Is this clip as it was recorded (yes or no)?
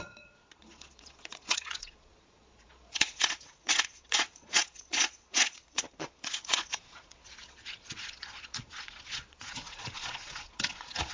no